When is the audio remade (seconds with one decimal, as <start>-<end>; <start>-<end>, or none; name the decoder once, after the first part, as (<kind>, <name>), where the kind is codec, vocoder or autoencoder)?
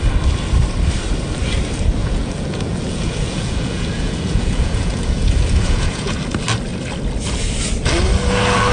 2.0-6.2 (vocoder, Vocos)